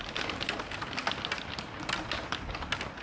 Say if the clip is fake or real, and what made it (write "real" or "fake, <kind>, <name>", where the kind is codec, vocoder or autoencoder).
real